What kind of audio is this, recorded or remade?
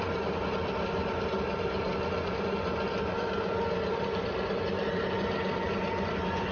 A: remade